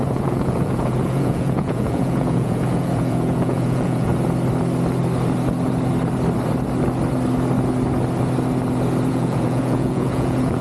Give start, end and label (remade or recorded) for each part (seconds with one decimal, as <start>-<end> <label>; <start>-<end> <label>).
0.0-4.1 remade; 4.1-9.1 recorded; 9.1-10.6 remade